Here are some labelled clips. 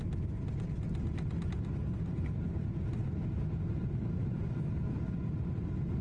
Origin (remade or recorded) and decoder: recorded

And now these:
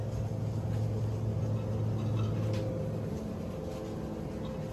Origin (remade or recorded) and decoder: recorded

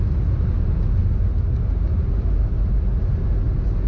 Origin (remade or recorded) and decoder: recorded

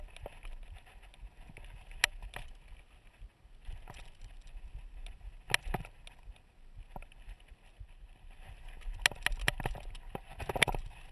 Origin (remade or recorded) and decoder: recorded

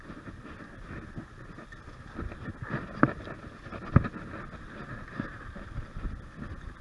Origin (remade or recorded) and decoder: recorded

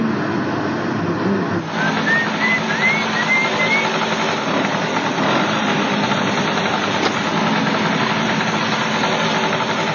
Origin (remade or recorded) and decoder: recorded